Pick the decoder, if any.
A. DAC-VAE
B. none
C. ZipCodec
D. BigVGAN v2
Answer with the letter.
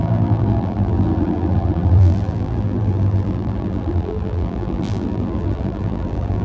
D